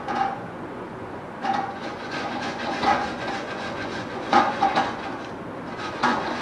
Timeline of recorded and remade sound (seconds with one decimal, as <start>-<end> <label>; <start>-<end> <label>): 0.0-5.2 remade; 5.2-5.7 recorded; 5.7-6.4 remade